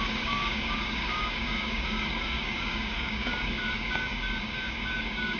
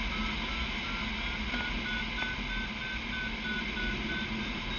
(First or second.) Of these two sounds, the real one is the second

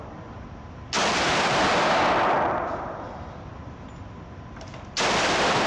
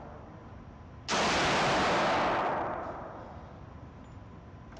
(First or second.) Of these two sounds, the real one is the second